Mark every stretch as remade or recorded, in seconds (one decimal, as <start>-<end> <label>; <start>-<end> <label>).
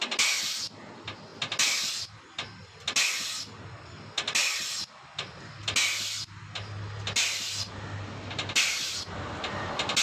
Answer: 0.0-10.0 recorded